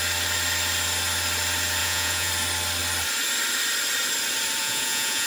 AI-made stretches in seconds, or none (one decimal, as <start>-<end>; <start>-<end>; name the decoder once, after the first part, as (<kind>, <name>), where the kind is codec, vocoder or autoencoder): 1.8-2.3 (vocoder, Vocos); 4.6-5.3

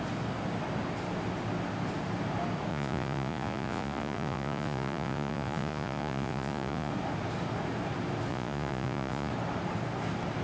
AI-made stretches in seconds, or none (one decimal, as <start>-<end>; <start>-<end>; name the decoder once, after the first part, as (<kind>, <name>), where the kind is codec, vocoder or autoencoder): 2.7-6.9 (vocoder, Vocos); 8.3-9.3

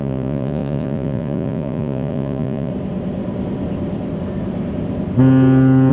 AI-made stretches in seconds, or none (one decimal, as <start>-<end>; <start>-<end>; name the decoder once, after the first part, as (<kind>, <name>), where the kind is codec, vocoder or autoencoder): 0.0-2.7 (vocoder, Vocos)

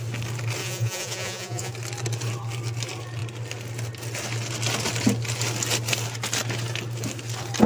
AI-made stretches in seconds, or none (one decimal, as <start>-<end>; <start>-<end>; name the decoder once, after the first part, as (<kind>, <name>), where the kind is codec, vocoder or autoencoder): 0.6-1.7 (vocoder, Vocos)

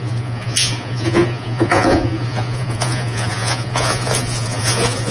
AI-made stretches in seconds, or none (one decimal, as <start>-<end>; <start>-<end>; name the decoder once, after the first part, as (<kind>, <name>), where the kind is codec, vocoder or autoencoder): 0.0-5.1 (vocoder, Vocos)

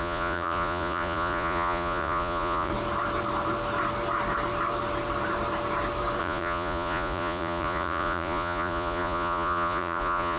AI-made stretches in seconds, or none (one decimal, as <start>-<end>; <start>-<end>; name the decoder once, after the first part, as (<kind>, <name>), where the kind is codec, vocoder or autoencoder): 0.0-2.7 (vocoder, Vocos); 6.2-10.4